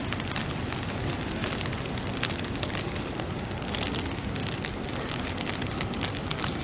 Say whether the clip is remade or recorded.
recorded